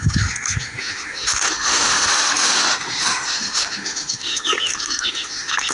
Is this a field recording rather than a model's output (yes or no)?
no